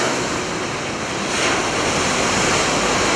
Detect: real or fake real